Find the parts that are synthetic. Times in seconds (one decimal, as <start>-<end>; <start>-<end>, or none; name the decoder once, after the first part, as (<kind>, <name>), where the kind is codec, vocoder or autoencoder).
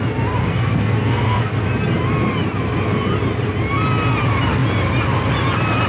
0.4-1.4 (codec, SNAC)